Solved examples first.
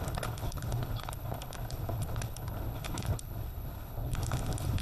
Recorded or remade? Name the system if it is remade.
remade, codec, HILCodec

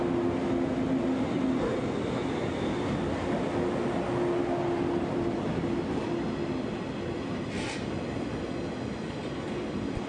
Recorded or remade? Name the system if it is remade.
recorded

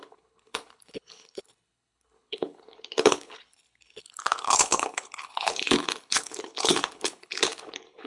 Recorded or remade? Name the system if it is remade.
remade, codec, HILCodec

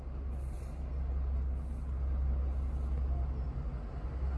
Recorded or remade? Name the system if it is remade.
recorded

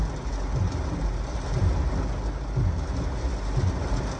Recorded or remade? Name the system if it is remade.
recorded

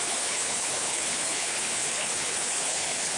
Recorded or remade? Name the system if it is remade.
remade, codec, HILCodec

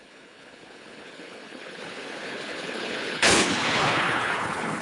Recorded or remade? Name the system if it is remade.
remade, codec, HILCodec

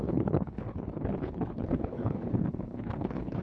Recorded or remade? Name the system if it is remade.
remade, codec, HILCodec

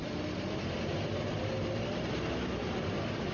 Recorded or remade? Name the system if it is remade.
recorded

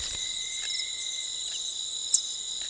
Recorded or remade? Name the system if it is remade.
recorded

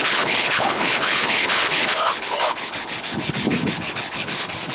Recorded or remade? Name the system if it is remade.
remade, codec, HILCodec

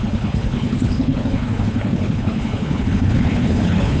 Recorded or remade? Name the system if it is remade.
remade, codec, HILCodec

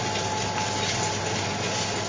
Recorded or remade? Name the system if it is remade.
recorded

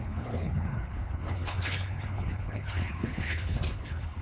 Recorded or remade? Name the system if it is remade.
remade, codec, HILCodec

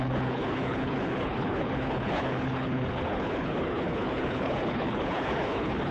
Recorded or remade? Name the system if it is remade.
remade, codec, HILCodec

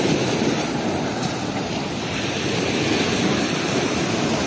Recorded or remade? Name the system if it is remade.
recorded